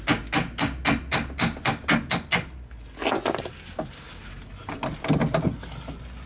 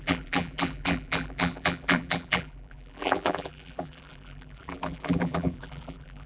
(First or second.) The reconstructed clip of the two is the second